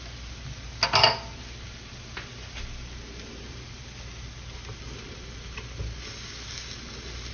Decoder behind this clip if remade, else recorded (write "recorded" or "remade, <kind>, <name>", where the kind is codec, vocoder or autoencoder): recorded